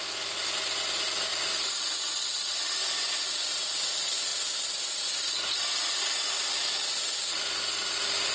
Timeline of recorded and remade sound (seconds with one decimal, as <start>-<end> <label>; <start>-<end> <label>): 0.0-8.3 recorded